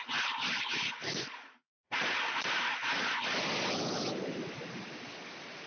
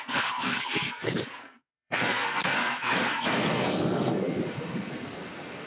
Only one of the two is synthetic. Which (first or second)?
second